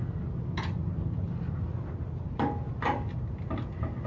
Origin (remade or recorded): recorded